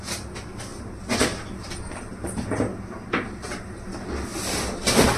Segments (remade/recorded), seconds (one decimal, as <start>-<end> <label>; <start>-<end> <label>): 0.0-5.2 recorded